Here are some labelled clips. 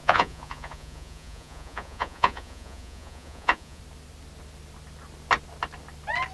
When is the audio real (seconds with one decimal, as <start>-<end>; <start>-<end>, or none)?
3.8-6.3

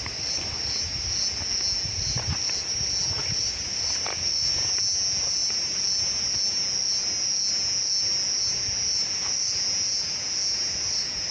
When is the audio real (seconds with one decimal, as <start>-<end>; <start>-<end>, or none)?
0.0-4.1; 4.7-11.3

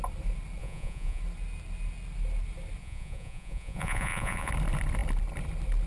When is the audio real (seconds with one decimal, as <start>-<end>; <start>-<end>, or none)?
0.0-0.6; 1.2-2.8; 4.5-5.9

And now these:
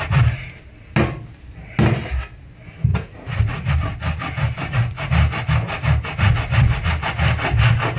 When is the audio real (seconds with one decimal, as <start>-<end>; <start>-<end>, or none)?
0.0-2.9; 3.7-4.6; 5.1-8.0

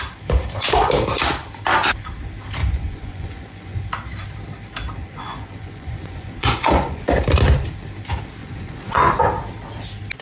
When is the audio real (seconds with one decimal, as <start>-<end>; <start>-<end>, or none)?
0.0-2.6; 3.8-5.0; 7.0-8.4; 9.2-10.2